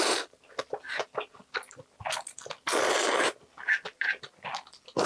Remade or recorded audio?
recorded